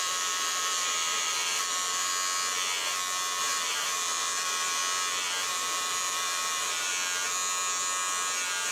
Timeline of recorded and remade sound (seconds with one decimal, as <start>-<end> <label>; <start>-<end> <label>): 0.0-2.1 remade; 2.1-3.4 recorded; 3.4-4.8 remade; 4.8-5.5 recorded; 5.5-6.9 remade; 6.9-8.7 recorded